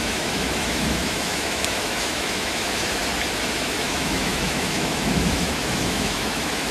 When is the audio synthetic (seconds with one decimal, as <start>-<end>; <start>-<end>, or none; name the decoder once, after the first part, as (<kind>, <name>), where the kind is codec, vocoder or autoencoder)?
0.0-3.0 (autoencoder, DAC-VAE); 3.5-6.7